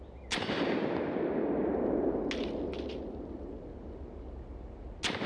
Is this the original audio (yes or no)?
yes